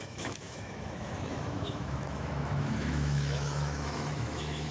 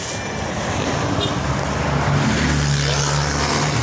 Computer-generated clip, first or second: first